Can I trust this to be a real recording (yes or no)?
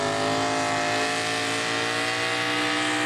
yes